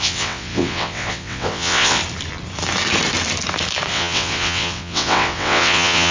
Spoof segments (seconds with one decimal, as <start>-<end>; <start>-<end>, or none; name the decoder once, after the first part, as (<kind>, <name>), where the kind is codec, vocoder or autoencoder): 0.0-2.0 (vocoder, WaveNeXt); 3.9-6.1